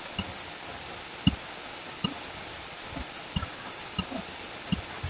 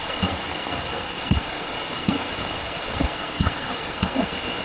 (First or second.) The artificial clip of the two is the second